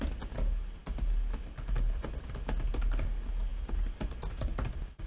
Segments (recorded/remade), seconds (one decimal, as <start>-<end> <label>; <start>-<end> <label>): 0.0-5.1 recorded